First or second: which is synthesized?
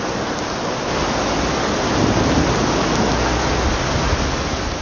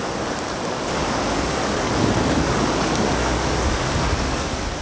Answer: second